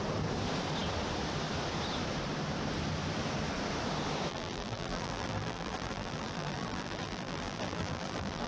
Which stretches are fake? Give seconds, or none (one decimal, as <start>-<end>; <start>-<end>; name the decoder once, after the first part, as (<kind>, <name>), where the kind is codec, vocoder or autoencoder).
4.3-8.5 (vocoder, BigVGAN v2)